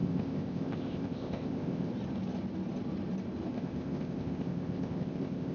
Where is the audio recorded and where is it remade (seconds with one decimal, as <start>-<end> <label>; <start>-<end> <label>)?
0.0-1.9 remade; 1.9-3.5 recorded; 3.5-5.5 remade